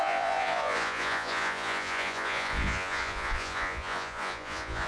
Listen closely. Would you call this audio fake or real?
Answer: fake